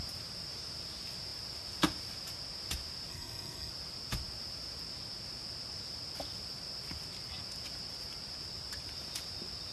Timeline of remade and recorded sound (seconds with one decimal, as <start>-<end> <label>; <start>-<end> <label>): 0.0-3.1 recorded; 3.1-3.7 remade; 3.7-9.7 recorded